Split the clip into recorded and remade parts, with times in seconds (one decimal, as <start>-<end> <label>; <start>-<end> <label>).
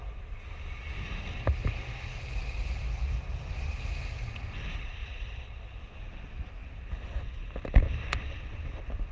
0.0-9.1 recorded